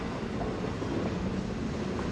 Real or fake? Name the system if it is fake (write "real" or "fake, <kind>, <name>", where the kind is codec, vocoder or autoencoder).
real